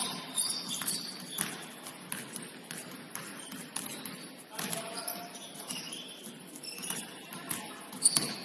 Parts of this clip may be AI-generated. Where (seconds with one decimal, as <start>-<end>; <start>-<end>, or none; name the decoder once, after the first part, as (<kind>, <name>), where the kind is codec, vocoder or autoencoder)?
none